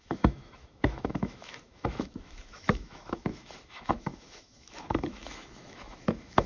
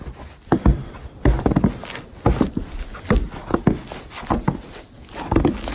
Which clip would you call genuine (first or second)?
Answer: second